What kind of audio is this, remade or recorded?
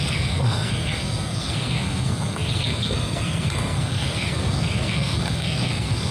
remade